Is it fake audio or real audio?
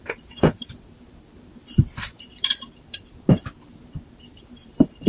fake